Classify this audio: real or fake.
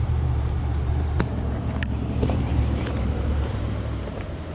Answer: fake